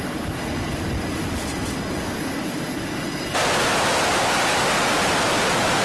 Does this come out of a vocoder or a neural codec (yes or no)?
no